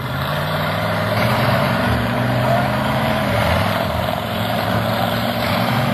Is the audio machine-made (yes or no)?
yes